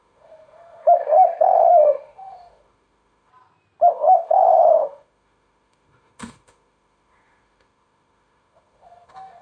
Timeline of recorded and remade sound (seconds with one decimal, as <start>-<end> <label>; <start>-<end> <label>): 0.0-3.3 remade; 3.3-3.9 recorded; 3.9-9.4 remade